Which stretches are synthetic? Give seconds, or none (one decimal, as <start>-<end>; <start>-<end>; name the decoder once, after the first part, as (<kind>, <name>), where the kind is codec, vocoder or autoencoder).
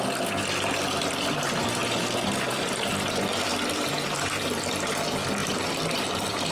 0.0-6.5 (vocoder, BigVGAN v2)